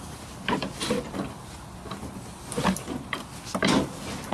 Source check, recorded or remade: recorded